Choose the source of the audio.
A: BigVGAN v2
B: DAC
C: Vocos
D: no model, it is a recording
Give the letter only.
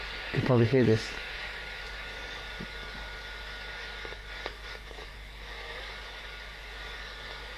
B